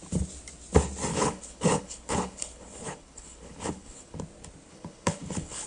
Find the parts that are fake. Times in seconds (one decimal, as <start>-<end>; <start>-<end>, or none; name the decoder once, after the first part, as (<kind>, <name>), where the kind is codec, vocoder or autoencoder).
1.1-4.2 (codec, HILCodec); 4.7-5.7